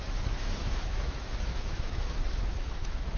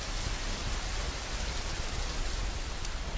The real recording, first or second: second